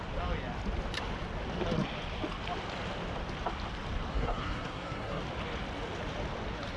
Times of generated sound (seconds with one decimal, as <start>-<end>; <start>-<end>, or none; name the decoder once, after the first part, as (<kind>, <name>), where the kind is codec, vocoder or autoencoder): 4.1-5.2 (codec, SNAC)